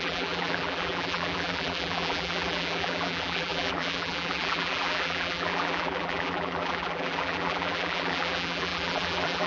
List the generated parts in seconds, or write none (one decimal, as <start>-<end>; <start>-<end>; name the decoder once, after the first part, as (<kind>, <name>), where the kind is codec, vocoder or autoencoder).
0.0-9.5 (vocoder, BigVGAN v2)